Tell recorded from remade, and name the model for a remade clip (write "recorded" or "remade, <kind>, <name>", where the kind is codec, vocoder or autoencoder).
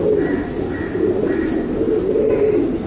recorded